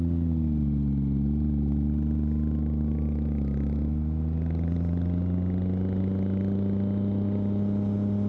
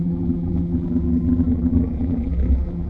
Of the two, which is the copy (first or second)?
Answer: second